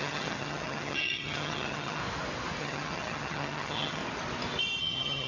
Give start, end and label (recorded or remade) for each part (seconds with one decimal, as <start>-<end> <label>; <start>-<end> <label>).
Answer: 0.0-2.0 remade; 2.0-2.6 recorded; 2.6-4.0 remade; 4.0-4.8 recorded; 4.8-5.3 remade